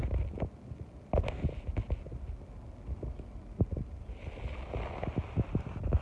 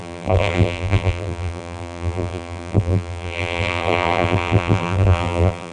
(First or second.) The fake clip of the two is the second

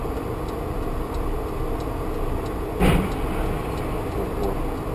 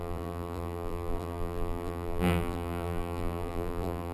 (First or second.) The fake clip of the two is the second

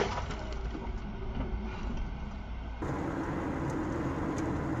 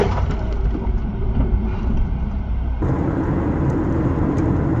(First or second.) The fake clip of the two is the second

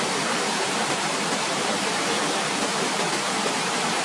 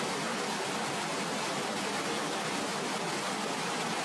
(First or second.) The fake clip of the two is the first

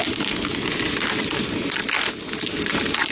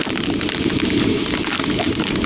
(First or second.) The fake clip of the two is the second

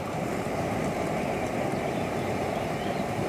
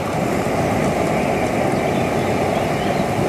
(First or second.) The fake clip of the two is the first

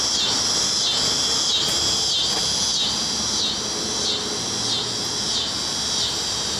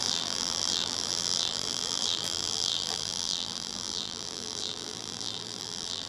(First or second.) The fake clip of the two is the second